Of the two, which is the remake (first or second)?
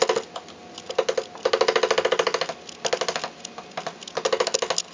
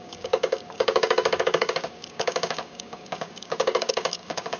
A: second